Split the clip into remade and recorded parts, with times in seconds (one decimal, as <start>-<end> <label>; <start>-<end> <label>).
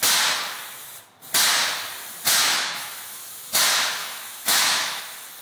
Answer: 0.0-2.4 recorded; 2.4-3.6 remade; 3.6-4.0 recorded; 4.0-5.0 remade; 5.0-5.4 recorded